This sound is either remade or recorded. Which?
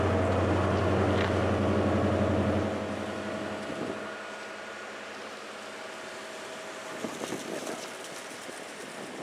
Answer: recorded